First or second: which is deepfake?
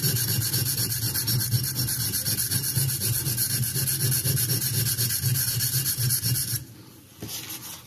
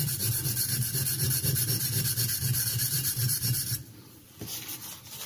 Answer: second